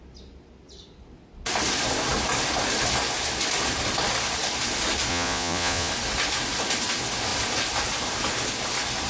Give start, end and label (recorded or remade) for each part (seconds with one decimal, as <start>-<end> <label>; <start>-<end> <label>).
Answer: 0.0-5.1 recorded; 5.1-5.9 remade; 5.9-9.1 recorded